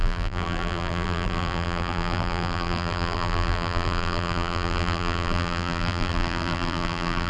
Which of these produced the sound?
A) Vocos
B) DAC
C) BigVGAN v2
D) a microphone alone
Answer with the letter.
C